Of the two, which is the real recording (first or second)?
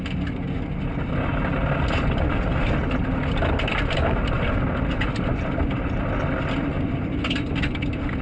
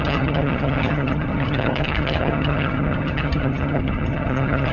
first